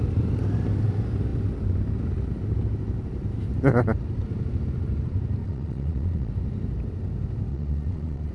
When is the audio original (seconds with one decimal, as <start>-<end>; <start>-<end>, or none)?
0.0-5.4; 6.3-7.5